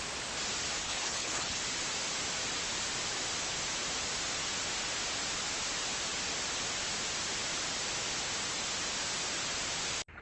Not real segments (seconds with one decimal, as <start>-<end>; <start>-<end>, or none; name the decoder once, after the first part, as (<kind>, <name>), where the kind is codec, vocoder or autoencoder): 0.8-1.6 (codec, HILCodec)